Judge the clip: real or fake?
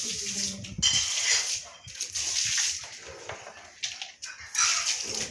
real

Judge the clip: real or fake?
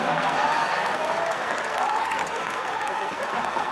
fake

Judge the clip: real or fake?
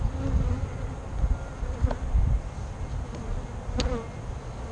real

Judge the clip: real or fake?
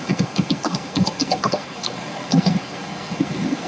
fake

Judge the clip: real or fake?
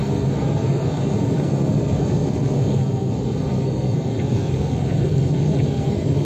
fake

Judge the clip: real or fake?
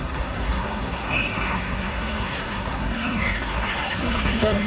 fake